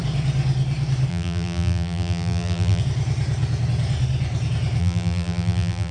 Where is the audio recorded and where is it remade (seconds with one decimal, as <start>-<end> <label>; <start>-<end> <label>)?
0.0-1.1 recorded; 1.1-2.8 remade; 2.8-4.8 recorded; 4.8-5.9 remade